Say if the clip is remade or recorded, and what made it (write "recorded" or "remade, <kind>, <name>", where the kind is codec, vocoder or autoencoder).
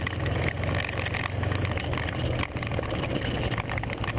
recorded